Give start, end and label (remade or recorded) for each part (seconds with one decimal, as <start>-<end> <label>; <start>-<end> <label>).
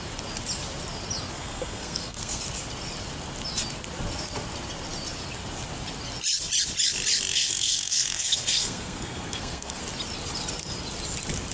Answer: 0.0-1.3 recorded; 1.3-2.4 remade; 2.4-7.3 recorded; 7.3-9.8 remade; 9.8-11.5 recorded